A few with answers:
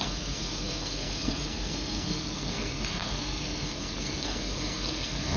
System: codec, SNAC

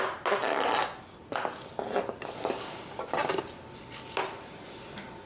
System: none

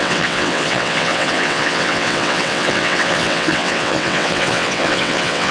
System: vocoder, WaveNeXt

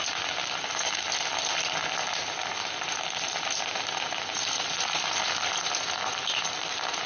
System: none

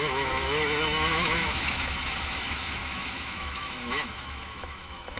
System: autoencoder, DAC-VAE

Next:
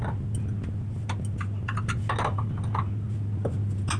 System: none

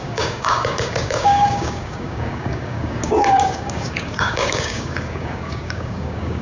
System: codec, DAC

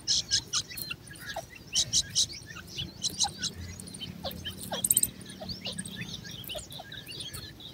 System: none